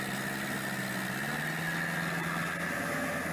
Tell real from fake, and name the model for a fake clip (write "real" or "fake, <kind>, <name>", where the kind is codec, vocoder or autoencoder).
real